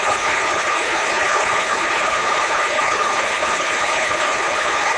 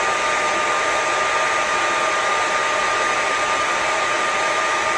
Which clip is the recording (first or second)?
second